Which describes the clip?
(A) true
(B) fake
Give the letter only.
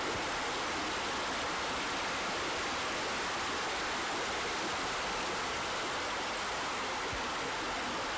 A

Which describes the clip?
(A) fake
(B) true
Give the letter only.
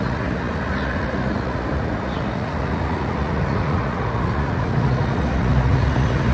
A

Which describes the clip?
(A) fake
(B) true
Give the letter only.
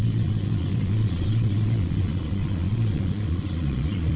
A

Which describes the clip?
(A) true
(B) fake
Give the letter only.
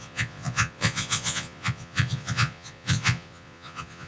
B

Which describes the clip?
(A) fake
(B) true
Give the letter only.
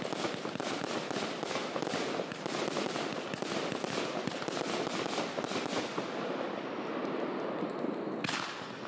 B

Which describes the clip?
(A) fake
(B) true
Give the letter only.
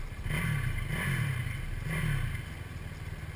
B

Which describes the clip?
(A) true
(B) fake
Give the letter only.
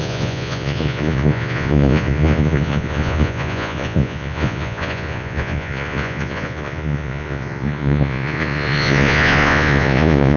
B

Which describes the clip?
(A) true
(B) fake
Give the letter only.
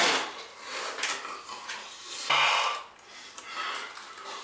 A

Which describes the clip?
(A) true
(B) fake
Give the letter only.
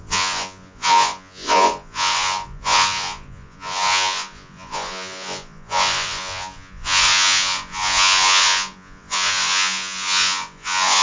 B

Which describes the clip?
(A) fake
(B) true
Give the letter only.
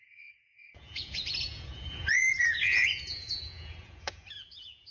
A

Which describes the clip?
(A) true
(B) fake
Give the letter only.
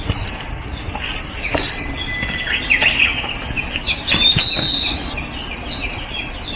A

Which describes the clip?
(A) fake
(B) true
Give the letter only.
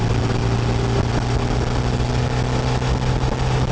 B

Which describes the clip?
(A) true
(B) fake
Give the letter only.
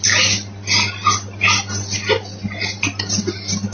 A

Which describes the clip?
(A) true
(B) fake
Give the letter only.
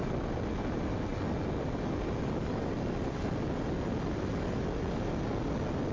A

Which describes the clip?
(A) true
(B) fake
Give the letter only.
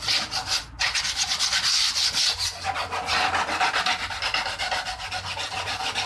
A